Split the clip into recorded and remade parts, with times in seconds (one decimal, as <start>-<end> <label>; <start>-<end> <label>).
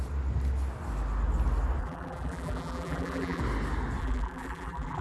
0.0-1.8 recorded; 1.8-3.4 remade; 3.4-4.0 recorded; 4.0-5.0 remade